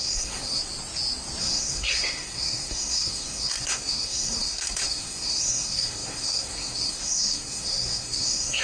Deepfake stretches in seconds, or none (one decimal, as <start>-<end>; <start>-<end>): 0.0-0.6; 1.4-8.6